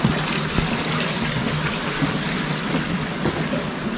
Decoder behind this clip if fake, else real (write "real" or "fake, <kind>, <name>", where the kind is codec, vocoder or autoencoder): real